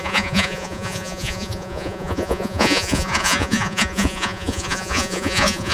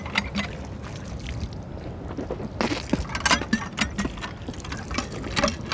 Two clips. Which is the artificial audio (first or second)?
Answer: first